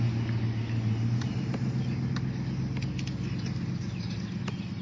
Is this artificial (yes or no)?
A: no